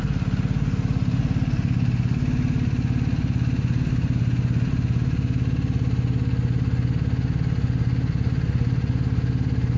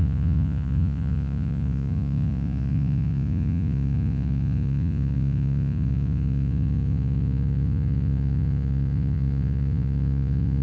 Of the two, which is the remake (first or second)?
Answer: second